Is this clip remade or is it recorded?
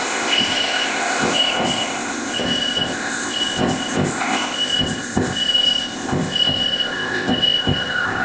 remade